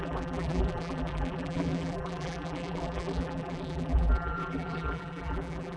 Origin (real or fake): fake